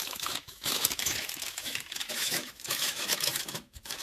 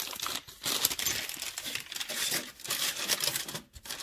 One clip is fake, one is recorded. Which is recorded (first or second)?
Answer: second